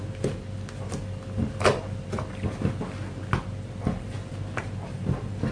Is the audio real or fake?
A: real